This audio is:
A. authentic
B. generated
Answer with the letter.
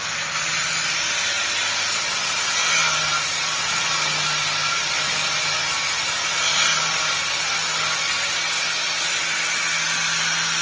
A